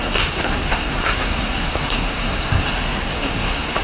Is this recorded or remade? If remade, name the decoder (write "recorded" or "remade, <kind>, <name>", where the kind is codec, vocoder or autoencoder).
remade, codec, SNAC